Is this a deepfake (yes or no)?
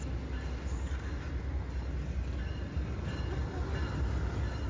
no